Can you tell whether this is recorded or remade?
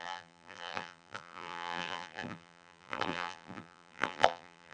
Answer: remade